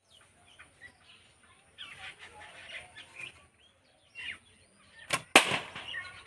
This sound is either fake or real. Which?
real